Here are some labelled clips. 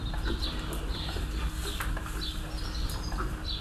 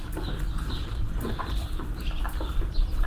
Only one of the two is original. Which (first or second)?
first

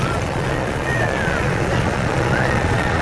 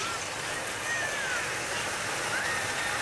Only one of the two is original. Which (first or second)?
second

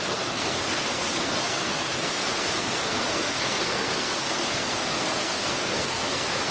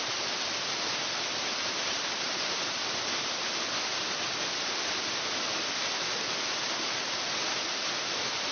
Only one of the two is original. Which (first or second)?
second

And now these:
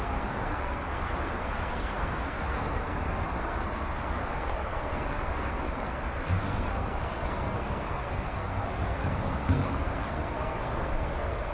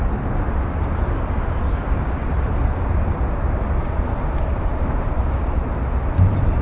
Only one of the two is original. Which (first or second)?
second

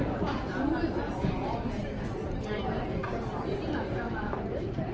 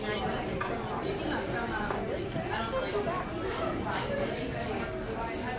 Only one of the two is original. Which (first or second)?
second